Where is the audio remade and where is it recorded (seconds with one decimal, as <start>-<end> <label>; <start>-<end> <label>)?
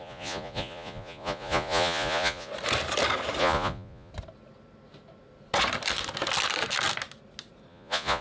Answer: 0.0-2.5 remade; 2.5-3.4 recorded; 3.4-4.1 remade; 4.1-7.7 recorded; 7.7-8.2 remade